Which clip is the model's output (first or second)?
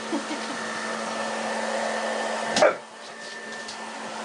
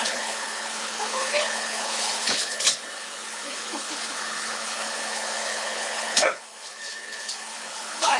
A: second